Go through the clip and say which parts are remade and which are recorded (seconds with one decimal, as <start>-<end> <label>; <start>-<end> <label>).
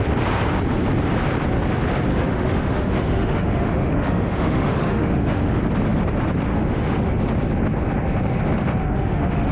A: 0.0-2.1 recorded; 2.1-5.6 remade; 5.6-6.5 recorded; 6.5-7.2 remade; 7.2-8.8 recorded; 8.8-9.5 remade